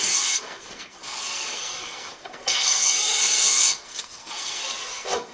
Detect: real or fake fake